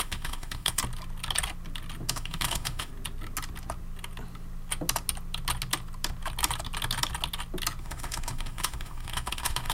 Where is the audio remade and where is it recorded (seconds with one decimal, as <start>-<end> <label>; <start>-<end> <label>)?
0.0-0.8 remade; 0.8-2.1 recorded; 2.1-2.9 remade; 2.9-7.8 recorded; 7.8-9.7 remade